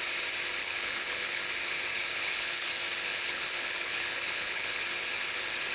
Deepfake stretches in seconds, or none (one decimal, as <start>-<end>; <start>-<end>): 0.6-1.4; 2.1-2.7; 3.1-4.8